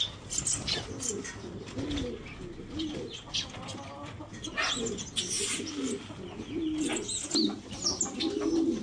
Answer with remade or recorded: recorded